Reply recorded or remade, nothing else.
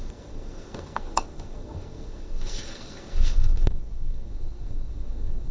remade